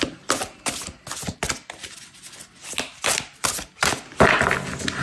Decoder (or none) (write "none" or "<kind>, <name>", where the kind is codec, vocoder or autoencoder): none